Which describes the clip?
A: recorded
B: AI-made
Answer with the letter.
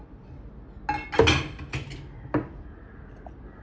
A